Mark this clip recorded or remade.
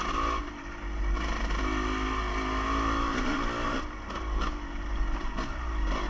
recorded